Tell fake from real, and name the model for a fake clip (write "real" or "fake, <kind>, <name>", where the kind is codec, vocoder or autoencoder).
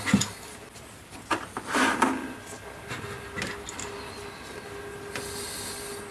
real